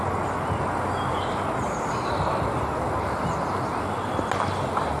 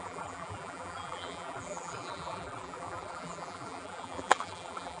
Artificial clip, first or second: second